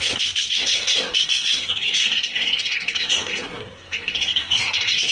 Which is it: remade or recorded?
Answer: remade